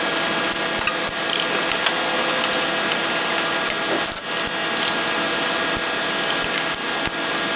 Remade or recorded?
recorded